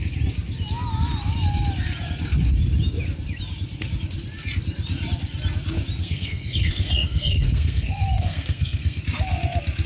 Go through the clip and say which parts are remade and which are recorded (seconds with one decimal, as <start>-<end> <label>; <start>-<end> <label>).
0.0-6.0 recorded; 6.0-9.0 remade; 9.0-9.9 recorded